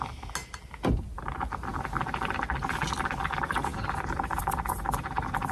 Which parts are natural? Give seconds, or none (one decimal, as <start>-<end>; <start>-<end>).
0.0-0.4; 1.2-5.5